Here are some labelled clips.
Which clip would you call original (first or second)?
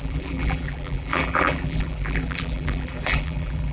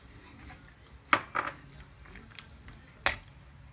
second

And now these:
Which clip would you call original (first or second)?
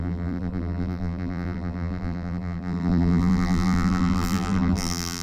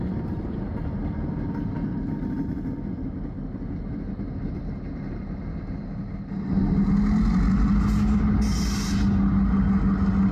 second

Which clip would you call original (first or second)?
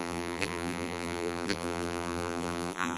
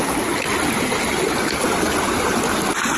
second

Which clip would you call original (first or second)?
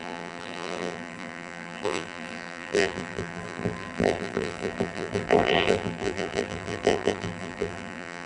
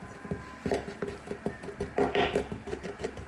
second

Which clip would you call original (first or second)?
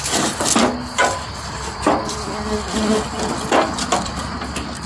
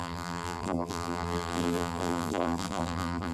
first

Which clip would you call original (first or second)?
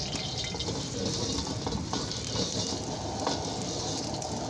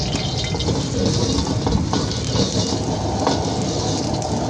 second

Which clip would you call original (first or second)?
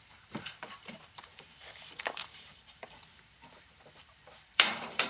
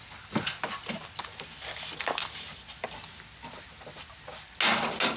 second